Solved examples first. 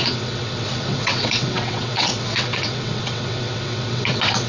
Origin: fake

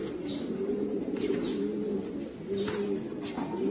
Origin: real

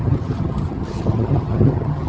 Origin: fake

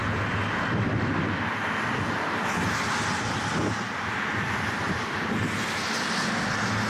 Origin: real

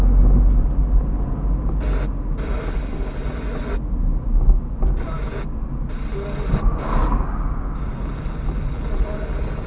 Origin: real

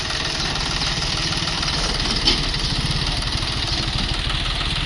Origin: real